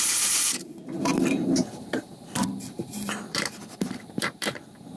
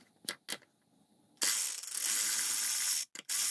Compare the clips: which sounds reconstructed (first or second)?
first